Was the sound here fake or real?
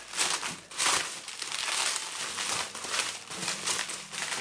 real